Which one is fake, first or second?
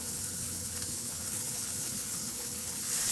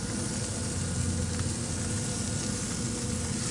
first